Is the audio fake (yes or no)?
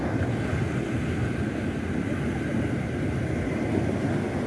no